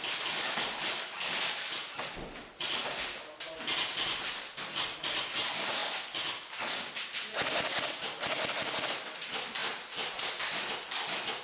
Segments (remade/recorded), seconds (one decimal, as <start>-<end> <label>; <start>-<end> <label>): 0.0-11.4 recorded